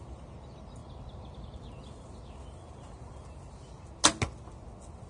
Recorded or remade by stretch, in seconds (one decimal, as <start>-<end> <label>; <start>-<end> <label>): 0.0-5.1 recorded